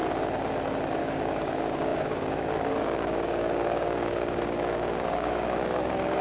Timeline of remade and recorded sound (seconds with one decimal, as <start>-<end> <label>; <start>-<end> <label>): 0.0-1.0 recorded; 1.0-6.2 remade